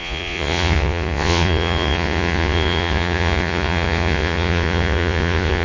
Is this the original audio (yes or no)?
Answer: no